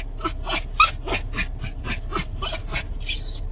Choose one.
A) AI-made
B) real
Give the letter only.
B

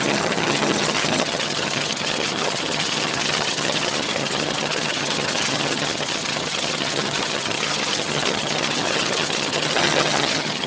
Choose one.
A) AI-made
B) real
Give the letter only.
A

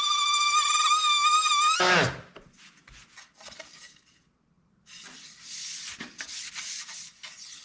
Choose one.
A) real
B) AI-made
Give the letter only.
A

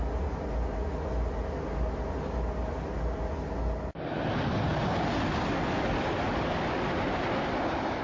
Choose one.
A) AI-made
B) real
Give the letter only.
B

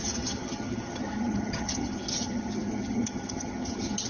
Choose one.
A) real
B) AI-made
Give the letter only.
B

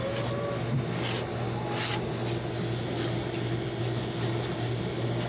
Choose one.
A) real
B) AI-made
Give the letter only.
A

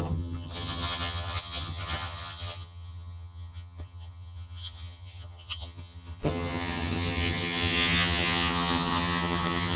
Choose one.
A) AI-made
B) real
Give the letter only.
A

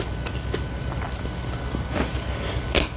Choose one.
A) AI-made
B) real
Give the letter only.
B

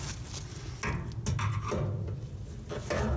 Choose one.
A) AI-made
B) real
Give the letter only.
B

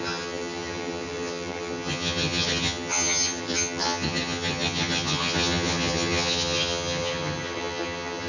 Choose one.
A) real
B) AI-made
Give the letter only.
B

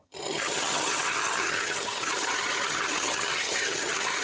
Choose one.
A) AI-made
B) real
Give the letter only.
A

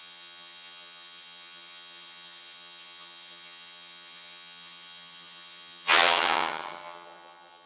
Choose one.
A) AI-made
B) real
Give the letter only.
A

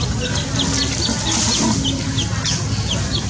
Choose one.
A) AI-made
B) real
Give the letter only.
B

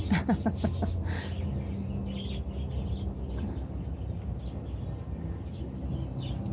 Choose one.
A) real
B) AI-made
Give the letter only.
A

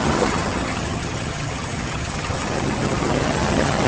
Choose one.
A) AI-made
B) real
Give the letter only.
A